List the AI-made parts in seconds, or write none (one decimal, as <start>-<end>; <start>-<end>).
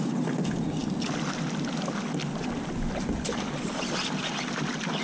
none